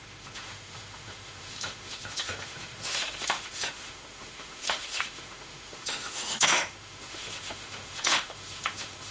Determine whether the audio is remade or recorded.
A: remade